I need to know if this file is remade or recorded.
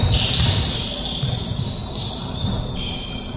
remade